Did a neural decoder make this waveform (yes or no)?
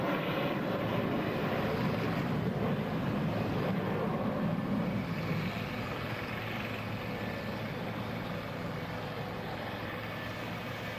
yes